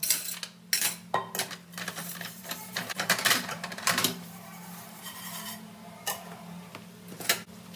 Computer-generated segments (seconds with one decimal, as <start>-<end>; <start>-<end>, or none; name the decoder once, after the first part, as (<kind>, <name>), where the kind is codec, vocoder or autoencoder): 2.0-6.7 (vocoder, BigVGAN v2)